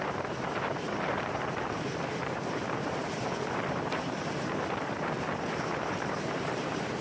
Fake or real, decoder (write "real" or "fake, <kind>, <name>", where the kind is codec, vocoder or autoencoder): fake, vocoder, BigVGAN v2